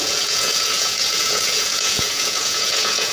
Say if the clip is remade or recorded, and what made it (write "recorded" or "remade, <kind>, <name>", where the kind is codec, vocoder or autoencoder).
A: remade, vocoder, Vocos